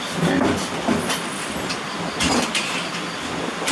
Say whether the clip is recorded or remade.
recorded